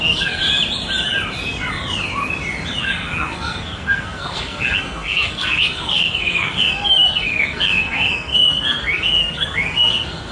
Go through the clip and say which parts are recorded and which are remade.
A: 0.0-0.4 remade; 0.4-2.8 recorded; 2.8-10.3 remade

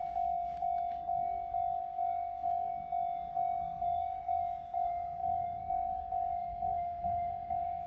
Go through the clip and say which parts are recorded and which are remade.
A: 0.0-1.8 recorded; 1.8-2.7 remade; 2.7-3.3 recorded; 3.3-7.9 remade

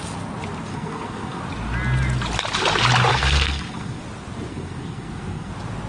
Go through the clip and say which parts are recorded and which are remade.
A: 0.0-0.7 recorded; 0.7-1.4 remade; 1.4-3.1 recorded; 3.1-4.0 remade; 4.0-4.5 recorded; 4.5-5.5 remade; 5.5-5.9 recorded

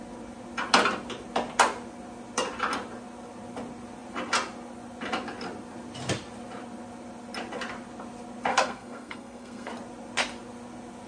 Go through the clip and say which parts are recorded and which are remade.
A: 0.0-8.5 recorded; 8.5-9.7 remade; 9.7-11.1 recorded

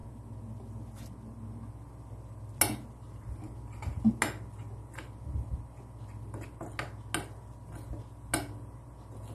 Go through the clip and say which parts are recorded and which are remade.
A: 0.0-9.3 recorded

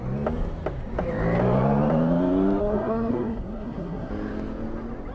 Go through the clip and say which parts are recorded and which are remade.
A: 0.0-2.6 recorded; 2.6-4.1 remade; 4.1-5.1 recorded

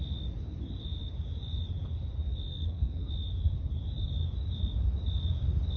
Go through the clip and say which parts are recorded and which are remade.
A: 0.0-2.5 recorded; 2.5-3.1 remade; 3.1-5.8 recorded